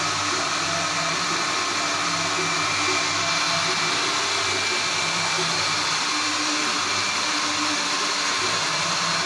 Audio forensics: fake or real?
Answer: fake